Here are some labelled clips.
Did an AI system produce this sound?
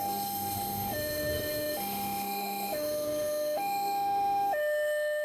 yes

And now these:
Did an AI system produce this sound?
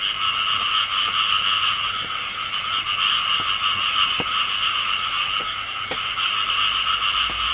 no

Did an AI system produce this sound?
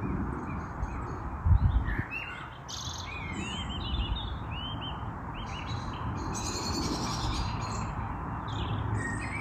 no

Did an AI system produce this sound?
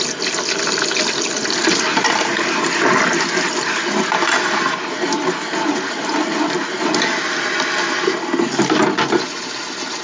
no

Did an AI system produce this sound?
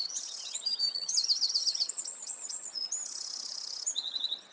yes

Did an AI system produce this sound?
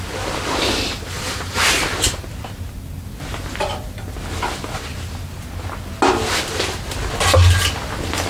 no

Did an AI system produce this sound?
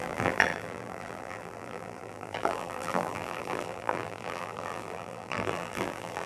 yes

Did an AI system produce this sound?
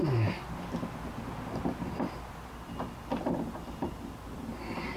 no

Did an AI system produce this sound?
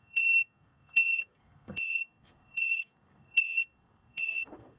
yes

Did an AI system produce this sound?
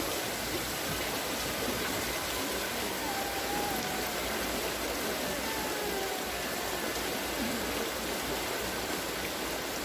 no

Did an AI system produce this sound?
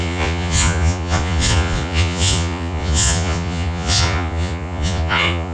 yes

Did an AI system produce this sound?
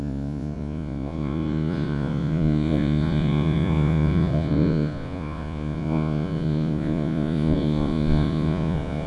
yes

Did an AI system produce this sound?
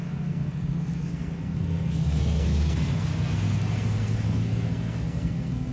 yes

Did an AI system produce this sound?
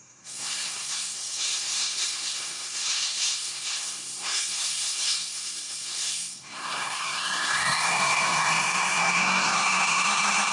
yes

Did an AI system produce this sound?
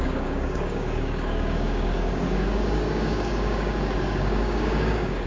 yes